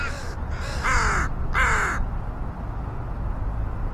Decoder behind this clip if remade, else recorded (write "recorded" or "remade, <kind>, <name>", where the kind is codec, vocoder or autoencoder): recorded